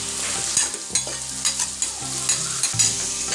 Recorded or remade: recorded